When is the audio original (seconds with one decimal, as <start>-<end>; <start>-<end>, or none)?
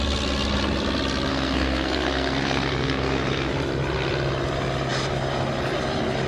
0.0-1.3; 3.5-6.3